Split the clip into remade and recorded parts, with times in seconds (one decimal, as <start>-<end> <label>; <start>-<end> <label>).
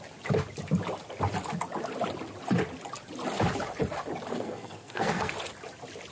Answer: 0.0-4.3 recorded; 4.3-5.3 remade; 5.3-6.1 recorded